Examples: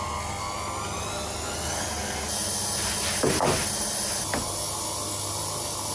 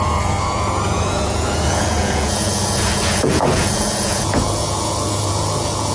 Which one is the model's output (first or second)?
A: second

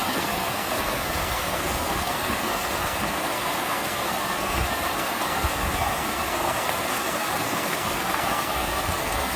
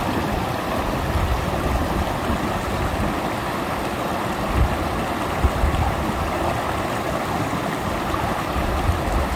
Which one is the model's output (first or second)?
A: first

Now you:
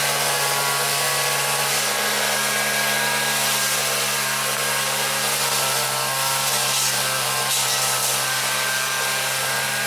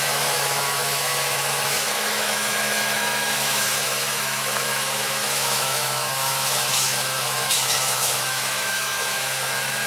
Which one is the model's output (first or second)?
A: second